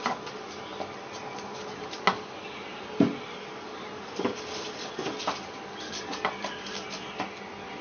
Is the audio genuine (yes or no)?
yes